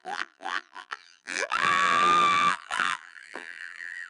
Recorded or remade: remade